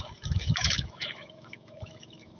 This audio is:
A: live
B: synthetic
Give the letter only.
B